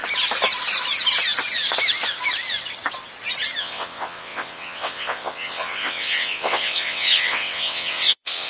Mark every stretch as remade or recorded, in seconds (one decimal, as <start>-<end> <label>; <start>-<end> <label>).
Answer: 0.0-3.6 recorded; 3.6-8.5 remade